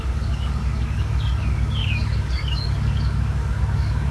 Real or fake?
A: fake